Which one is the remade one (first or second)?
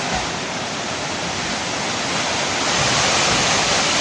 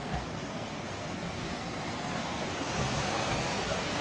second